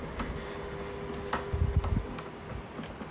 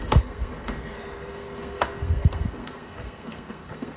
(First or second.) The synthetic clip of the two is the second